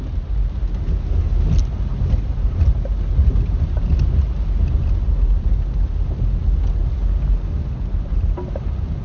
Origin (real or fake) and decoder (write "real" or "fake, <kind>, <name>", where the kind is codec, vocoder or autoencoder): real